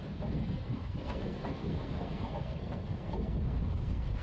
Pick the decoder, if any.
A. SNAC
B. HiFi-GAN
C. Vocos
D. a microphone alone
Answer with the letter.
A